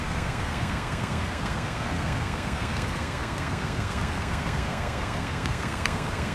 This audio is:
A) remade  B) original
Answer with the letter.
A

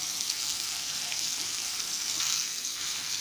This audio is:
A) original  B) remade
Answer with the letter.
B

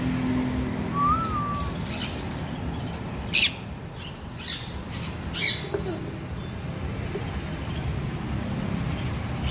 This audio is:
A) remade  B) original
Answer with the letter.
B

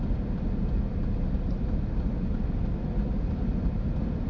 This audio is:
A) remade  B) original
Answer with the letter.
B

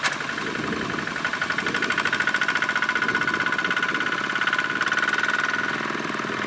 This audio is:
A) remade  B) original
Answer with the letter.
B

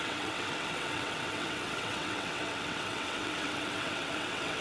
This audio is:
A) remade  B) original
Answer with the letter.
A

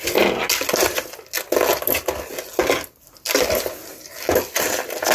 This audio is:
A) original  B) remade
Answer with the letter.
A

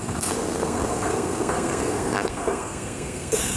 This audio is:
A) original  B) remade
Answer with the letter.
B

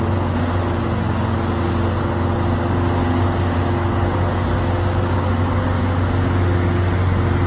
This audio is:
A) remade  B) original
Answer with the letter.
B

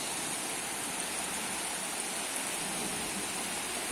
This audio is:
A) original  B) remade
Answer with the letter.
A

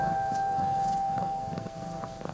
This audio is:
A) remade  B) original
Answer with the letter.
A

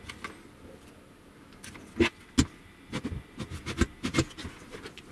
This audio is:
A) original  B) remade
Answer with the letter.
A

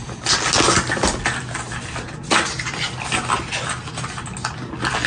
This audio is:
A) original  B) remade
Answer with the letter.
A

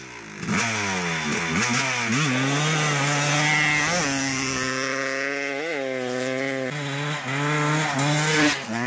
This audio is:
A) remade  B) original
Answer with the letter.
B